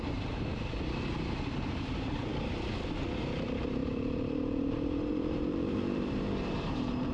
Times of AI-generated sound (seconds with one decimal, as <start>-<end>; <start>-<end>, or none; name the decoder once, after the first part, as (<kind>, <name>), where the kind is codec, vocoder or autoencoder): 0.0-2.3 (vocoder, BigVGAN v2); 3.2-7.1

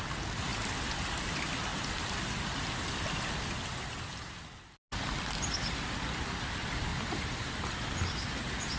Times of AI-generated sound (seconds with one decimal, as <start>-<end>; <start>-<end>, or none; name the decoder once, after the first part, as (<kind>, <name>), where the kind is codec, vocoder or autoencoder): 0.5-1.1 (vocoder, BigVGAN v2); 6.9-7.8